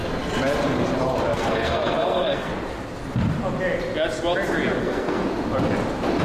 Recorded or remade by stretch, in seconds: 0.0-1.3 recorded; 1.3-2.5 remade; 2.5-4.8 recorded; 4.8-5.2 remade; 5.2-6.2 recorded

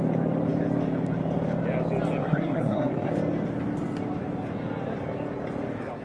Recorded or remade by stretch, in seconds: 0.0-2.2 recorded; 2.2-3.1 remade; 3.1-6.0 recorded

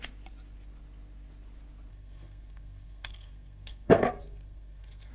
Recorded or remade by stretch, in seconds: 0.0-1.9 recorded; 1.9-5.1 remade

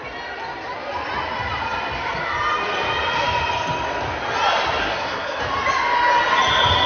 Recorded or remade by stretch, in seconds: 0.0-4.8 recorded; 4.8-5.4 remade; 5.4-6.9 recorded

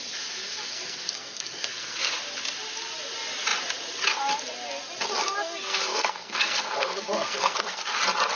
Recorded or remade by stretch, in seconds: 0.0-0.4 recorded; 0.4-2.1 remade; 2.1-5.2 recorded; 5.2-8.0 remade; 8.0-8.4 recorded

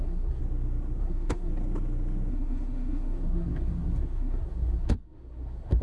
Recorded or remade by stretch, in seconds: 0.0-0.4 remade; 0.4-1.0 recorded; 1.0-1.5 remade; 1.5-2.3 recorded; 2.3-5.8 remade